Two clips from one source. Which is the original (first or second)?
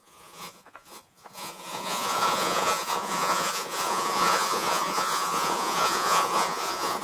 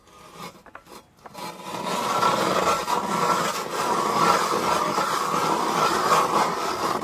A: second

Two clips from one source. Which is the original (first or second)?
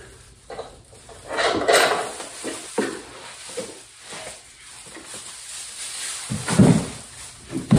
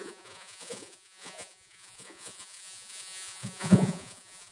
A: first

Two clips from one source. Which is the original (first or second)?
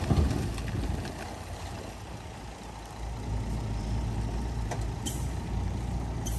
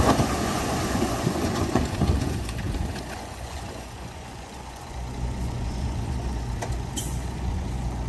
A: first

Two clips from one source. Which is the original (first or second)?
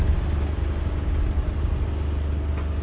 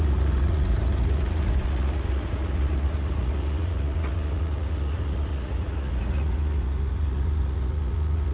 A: first